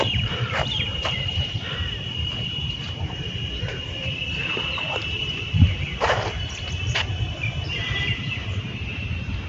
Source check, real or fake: fake